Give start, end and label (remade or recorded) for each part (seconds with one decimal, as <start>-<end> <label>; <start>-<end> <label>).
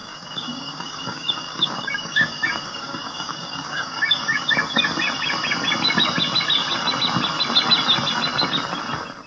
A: 0.0-4.5 remade; 4.5-9.3 recorded